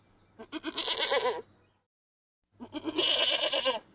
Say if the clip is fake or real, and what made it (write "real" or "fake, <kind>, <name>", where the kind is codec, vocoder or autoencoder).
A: real